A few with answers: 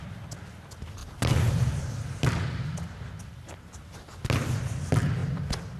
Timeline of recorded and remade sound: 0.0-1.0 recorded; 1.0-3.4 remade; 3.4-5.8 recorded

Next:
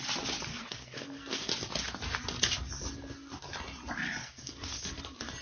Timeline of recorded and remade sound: 0.0-0.5 recorded; 0.5-1.5 remade; 1.5-4.2 recorded; 4.2-5.0 remade; 5.0-5.4 recorded

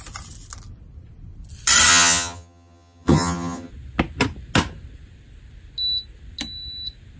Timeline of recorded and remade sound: 0.0-1.9 recorded; 1.9-3.7 remade; 3.7-7.2 recorded

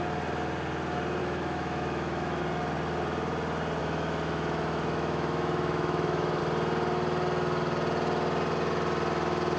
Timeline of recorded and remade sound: 0.0-1.2 recorded; 1.2-2.4 remade; 2.4-3.8 recorded; 3.8-6.4 remade; 6.4-9.6 recorded

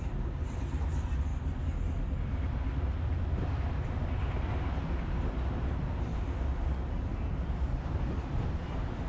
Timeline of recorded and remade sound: 0.0-9.1 recorded